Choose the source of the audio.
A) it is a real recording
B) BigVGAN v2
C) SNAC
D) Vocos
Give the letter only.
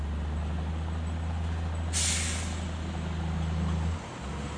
A